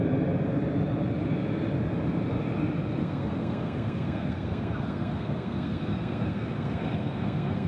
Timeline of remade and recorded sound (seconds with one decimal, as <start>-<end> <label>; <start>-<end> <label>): 0.0-3.0 recorded; 3.0-7.7 remade